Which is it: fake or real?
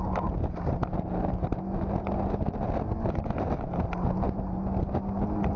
real